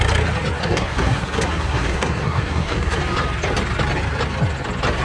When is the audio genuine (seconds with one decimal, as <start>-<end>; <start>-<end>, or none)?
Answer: 0.0-0.6; 3.0-5.0